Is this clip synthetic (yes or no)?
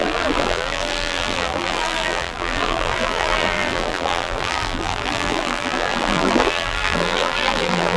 yes